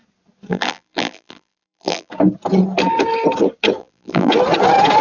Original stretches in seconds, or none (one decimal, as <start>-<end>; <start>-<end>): 0.0-0.5; 2.1-3.8; 4.3-5.0